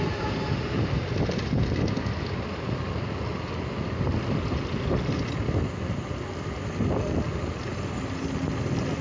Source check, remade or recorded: recorded